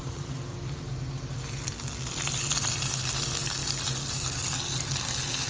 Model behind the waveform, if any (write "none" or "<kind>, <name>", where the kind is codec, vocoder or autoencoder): none